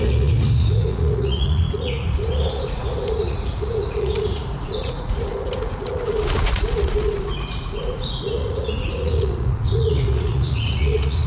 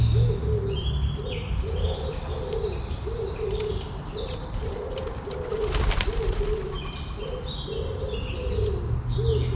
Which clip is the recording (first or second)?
second